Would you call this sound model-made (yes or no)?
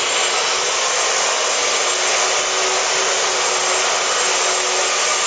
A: no